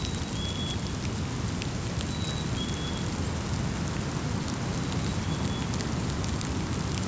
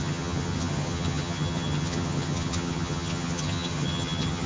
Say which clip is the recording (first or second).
first